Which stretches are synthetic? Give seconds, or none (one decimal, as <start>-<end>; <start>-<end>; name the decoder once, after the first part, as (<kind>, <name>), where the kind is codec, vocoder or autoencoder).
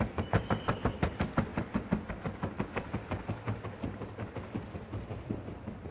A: none